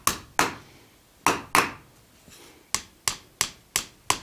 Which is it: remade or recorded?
recorded